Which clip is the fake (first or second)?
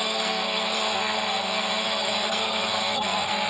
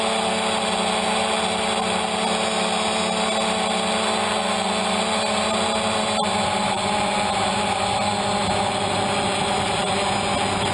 first